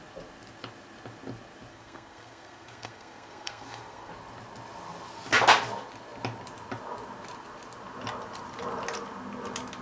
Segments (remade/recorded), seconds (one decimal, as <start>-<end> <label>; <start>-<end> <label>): 0.0-1.7 recorded; 1.7-4.1 remade; 4.1-9.8 recorded